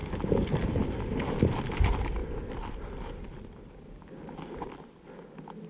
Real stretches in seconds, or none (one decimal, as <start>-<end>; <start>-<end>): 0.0-5.7